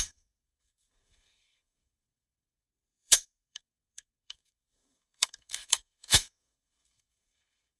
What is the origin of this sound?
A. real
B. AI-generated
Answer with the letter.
B